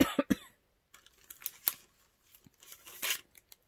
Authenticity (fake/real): real